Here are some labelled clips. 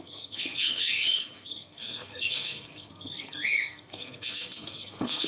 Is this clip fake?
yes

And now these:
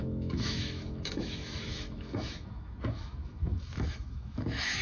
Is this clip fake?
yes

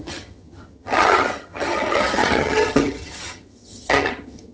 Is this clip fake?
yes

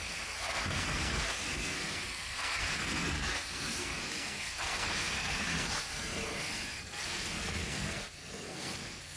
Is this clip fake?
yes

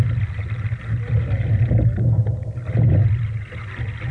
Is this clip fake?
no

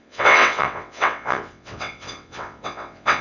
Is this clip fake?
yes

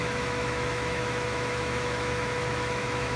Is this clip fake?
yes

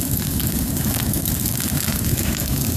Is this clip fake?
yes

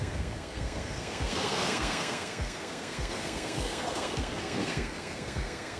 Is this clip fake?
yes